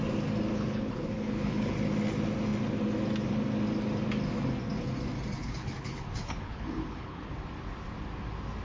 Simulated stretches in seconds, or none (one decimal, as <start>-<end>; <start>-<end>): 0.5-1.7; 5.4-7.3